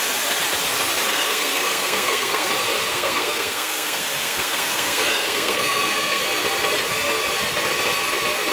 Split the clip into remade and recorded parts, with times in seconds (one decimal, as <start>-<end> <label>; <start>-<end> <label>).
0.0-1.1 recorded; 1.1-2.5 remade; 2.5-2.9 recorded; 2.9-6.2 remade; 6.2-8.5 recorded